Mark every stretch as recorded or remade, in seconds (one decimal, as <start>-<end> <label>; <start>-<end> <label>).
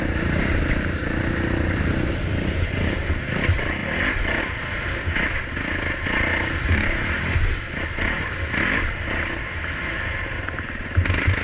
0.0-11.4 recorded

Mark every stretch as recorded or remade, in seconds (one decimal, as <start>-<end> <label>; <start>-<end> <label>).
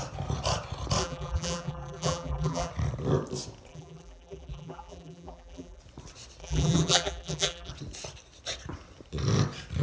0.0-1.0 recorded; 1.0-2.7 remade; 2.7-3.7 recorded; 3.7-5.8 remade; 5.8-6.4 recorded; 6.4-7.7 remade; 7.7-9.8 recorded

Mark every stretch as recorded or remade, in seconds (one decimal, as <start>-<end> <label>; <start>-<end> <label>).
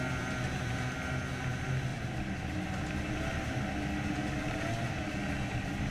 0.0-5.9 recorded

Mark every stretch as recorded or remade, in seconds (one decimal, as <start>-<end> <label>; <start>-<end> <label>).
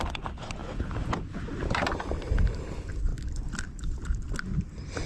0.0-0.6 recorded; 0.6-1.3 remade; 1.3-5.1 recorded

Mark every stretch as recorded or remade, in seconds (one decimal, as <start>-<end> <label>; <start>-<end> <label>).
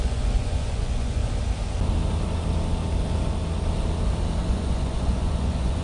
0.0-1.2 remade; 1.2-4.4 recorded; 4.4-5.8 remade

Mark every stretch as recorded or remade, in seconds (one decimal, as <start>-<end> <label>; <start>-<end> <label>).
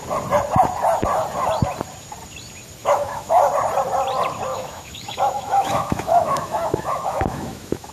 0.0-2.8 recorded; 2.8-3.4 remade; 3.4-4.5 recorded; 4.5-7.9 remade